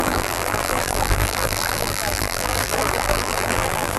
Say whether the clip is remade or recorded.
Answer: remade